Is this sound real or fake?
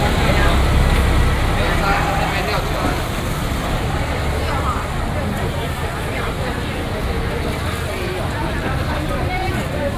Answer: real